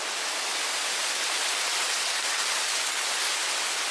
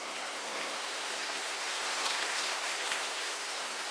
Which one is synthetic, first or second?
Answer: second